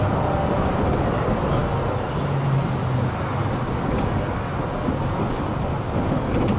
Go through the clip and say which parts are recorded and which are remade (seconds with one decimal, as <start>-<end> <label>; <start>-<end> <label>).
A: 0.0-6.6 recorded